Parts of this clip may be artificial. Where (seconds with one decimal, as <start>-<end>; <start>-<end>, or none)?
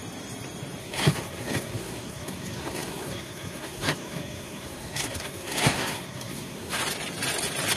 0.8-6.8